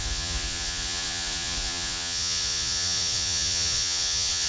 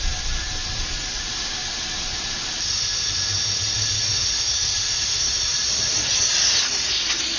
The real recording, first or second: second